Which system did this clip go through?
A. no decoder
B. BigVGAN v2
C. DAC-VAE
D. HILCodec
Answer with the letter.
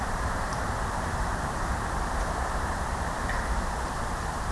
B